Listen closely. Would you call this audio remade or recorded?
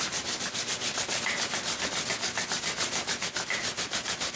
recorded